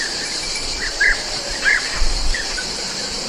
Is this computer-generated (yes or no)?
yes